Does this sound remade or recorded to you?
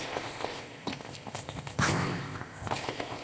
remade